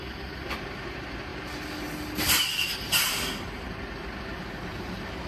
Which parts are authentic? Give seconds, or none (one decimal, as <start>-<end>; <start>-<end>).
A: 0.0-5.3